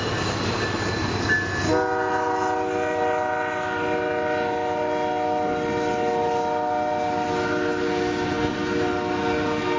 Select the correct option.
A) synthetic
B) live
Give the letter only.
B